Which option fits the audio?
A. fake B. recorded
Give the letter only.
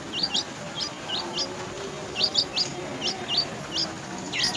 B